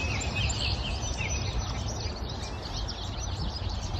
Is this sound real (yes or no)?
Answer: yes